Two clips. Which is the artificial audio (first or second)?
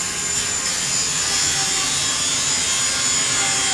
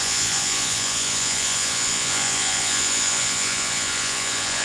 second